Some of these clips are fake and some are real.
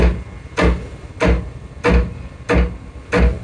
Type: real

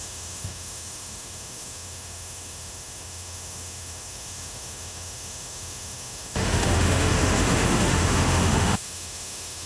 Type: fake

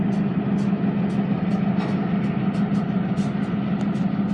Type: real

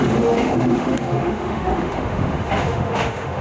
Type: fake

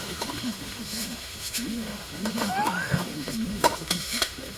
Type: fake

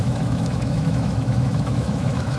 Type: fake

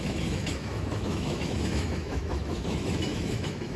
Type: fake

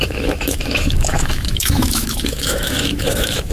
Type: fake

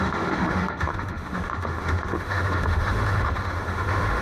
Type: fake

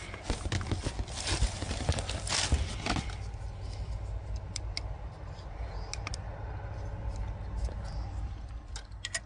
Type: real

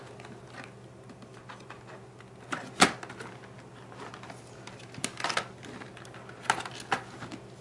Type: real